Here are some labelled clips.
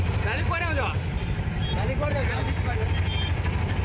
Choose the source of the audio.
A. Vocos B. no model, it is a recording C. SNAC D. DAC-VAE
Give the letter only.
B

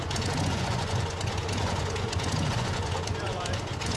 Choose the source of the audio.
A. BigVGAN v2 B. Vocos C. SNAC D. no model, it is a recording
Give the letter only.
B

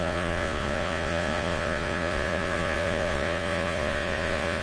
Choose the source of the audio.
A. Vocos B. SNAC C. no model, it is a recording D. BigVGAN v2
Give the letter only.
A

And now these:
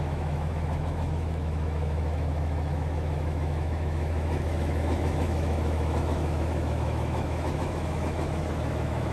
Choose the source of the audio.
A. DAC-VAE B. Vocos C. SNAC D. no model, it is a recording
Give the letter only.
A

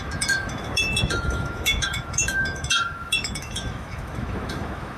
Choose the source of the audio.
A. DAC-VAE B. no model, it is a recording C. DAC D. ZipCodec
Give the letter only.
A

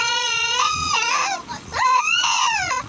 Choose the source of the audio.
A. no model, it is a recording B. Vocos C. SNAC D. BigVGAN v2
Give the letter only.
B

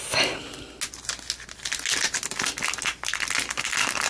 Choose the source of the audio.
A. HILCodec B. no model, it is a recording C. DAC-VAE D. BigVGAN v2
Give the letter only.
B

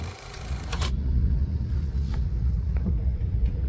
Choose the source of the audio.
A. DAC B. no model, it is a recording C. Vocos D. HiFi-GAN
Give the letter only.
C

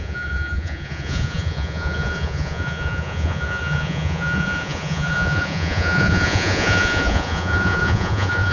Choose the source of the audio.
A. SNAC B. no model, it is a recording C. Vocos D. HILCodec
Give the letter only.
C